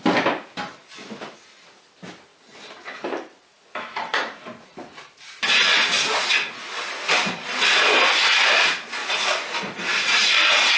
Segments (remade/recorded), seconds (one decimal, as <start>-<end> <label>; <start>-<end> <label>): 0.0-2.3 recorded; 2.3-5.3 remade; 5.3-7.0 recorded; 7.0-7.8 remade; 7.8-10.8 recorded